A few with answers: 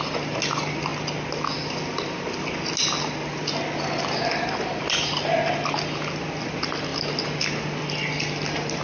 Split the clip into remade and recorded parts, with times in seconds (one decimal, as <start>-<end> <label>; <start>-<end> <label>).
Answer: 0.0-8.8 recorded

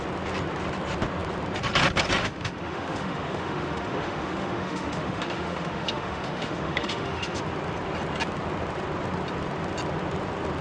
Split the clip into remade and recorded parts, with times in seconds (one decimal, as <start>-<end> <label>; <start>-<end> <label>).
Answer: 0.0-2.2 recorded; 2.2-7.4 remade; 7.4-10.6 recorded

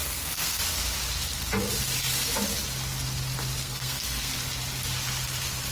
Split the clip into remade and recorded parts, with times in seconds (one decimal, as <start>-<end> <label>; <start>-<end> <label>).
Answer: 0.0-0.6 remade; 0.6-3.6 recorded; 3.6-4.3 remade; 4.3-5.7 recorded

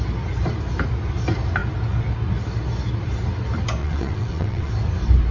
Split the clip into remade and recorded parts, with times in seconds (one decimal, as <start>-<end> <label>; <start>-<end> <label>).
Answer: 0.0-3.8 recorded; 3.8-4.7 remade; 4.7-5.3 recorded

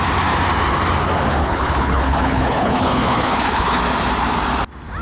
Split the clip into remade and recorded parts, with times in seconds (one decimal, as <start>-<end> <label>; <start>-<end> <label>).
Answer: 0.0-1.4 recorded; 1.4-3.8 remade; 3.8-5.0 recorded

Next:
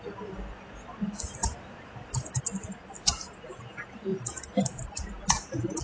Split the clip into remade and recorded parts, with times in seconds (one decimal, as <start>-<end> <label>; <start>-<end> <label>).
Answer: 0.0-1.4 recorded; 1.4-2.4 remade; 2.4-4.1 recorded; 4.1-5.1 remade; 5.1-5.8 recorded

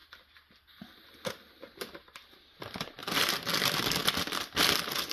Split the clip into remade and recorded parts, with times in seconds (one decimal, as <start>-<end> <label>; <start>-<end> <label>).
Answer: 0.0-5.1 recorded